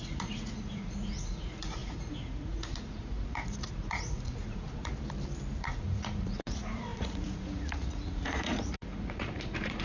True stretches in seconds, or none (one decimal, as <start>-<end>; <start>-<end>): 4.9-5.6